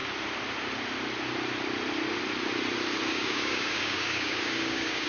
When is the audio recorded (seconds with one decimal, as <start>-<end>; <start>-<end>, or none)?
0.0-3.1